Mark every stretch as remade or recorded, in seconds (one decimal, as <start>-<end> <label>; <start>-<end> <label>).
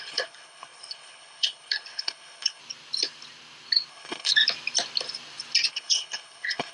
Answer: 0.0-2.6 remade; 2.6-3.9 recorded; 3.9-4.3 remade; 4.3-5.7 recorded; 5.7-6.7 remade